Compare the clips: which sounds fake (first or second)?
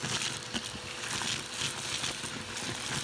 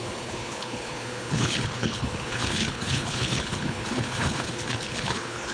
second